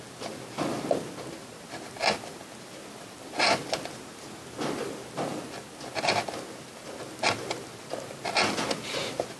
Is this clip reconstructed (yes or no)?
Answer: no